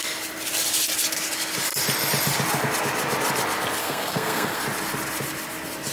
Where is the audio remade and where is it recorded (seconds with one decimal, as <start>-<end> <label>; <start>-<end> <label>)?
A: 0.0-3.8 recorded; 3.8-4.6 remade; 4.6-5.9 recorded